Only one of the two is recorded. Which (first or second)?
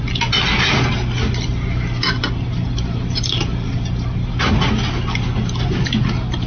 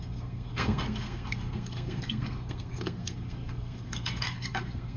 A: first